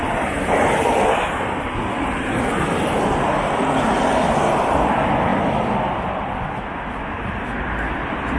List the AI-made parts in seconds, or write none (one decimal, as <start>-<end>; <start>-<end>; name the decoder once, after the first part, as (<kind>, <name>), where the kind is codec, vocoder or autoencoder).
none